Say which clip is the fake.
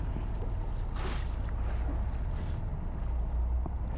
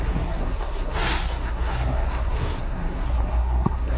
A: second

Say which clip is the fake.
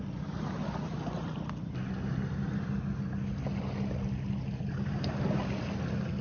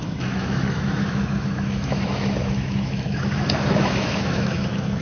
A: second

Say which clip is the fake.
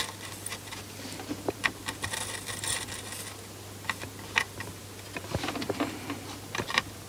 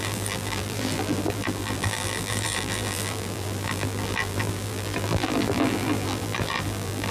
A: second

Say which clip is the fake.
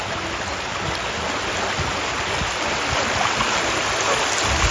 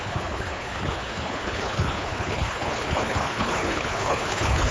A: second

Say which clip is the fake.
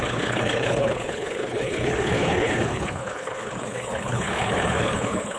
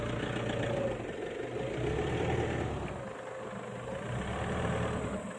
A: first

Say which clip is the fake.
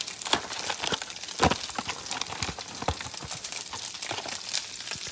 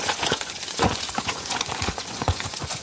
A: second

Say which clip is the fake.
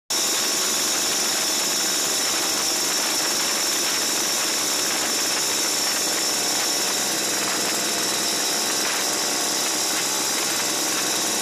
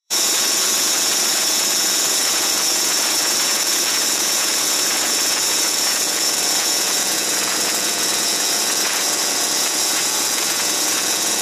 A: second